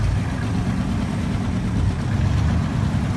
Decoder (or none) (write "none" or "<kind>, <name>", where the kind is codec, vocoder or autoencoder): none